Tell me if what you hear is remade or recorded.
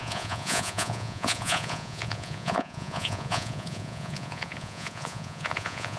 remade